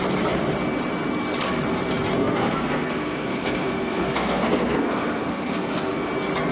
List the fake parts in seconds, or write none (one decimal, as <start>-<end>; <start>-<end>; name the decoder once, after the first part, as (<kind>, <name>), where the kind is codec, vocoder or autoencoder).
2.2-6.1 (codec, SNAC)